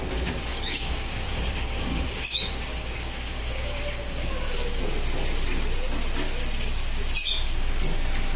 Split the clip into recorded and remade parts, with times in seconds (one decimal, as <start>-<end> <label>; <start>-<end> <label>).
0.0-0.5 recorded; 0.5-4.8 remade; 4.8-7.3 recorded; 7.3-7.8 remade; 7.8-8.4 recorded